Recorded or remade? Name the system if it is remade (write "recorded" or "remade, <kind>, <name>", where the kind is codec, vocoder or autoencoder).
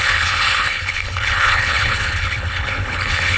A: remade, codec, HILCodec